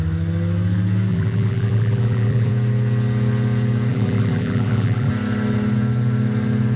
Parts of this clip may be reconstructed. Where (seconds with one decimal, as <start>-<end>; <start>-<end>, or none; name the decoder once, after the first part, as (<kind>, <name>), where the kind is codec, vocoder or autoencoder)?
1.1-2.5 (vocoder, BigVGAN v2); 3.9-5.1